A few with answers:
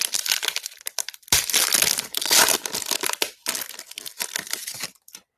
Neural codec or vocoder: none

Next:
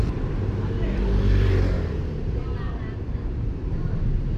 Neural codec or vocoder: vocoder, BigVGAN v2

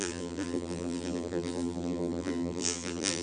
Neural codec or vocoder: vocoder, BigVGAN v2